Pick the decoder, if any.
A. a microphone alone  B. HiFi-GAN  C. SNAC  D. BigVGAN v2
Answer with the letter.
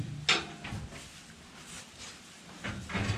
A